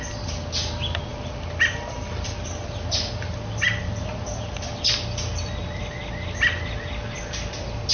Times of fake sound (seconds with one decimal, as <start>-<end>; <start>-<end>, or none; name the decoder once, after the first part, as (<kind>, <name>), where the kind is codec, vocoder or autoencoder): none